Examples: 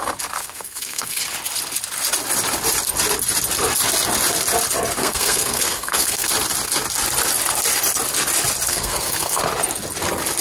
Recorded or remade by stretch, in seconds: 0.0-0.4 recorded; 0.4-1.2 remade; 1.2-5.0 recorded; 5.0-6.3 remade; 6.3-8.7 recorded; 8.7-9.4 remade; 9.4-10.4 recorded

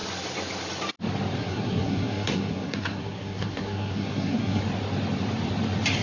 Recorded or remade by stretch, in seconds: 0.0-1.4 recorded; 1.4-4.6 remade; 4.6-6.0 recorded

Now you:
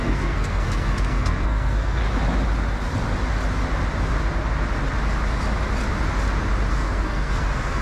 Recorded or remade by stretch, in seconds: 0.0-2.0 remade; 2.0-6.7 recorded; 6.7-7.8 remade

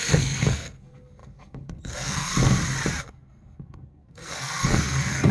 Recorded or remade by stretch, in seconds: 0.0-2.3 remade; 2.3-3.0 recorded; 3.0-5.3 remade

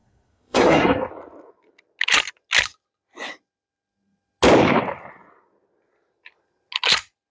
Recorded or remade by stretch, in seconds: 0.0-1.1 remade; 1.1-7.3 recorded

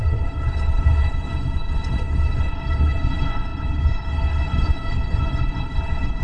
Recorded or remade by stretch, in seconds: 0.0-6.2 remade

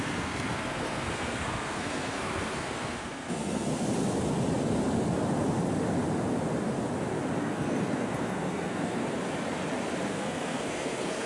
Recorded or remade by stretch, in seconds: 0.0-3.7 remade; 3.7-7.4 recorded; 7.4-9.0 remade; 9.0-10.1 recorded; 10.1-11.3 remade